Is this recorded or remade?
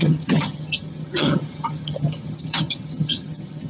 remade